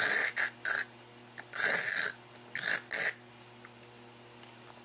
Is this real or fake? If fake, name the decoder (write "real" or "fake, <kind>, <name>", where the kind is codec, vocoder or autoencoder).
real